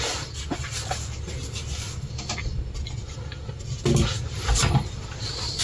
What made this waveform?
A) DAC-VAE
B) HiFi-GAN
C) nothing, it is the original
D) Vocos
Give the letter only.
C